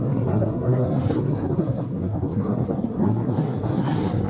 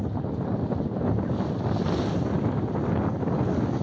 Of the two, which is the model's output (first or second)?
first